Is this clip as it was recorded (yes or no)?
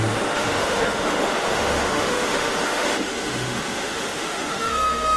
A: no